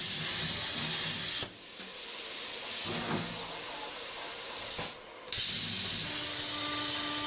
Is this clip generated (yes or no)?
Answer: no